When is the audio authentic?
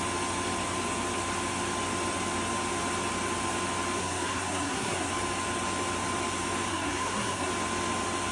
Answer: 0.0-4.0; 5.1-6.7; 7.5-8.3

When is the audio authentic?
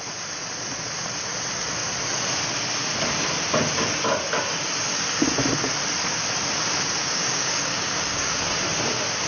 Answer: 0.0-7.0; 8.4-9.3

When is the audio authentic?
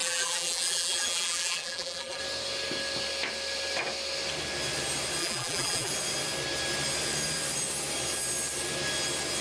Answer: 2.2-5.2; 5.9-9.4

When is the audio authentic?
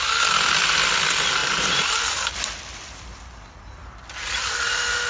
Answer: 0.0-1.4; 2.0-3.8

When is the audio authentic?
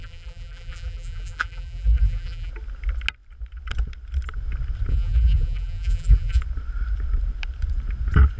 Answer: 2.5-4.9; 6.4-8.4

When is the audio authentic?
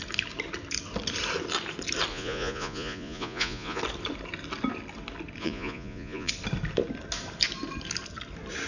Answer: 0.0-2.1; 3.8-5.4; 6.3-8.7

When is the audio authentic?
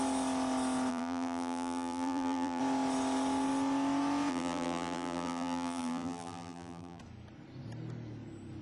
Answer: 0.0-0.9; 2.6-4.3; 7.0-8.6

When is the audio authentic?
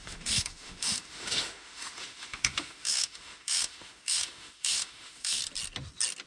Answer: 5.4-6.3